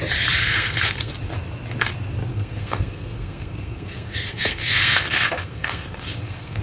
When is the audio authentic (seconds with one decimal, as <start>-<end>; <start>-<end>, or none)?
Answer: 0.0-0.4; 1.1-2.3